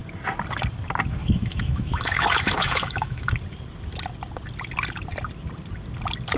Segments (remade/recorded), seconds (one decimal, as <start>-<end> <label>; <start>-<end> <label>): 0.0-1.2 recorded; 1.2-3.3 remade; 3.3-6.4 recorded